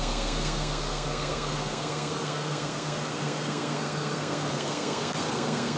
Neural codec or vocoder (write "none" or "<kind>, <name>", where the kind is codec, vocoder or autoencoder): codec, SNAC